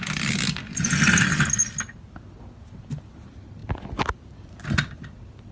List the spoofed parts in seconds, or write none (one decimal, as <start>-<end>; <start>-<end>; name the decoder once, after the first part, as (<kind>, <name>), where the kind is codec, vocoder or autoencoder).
none